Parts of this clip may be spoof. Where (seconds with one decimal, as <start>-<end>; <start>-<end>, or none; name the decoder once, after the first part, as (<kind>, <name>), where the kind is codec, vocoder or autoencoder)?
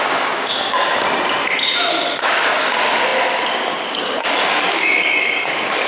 0.0-0.9 (codec, DAC); 1.6-5.9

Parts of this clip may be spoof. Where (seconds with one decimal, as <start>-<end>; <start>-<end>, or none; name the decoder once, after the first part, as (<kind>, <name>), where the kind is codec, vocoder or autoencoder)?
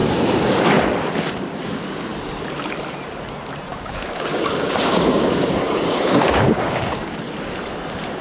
3.7-7.2 (codec, DAC)